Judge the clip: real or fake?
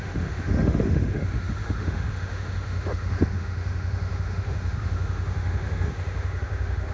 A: fake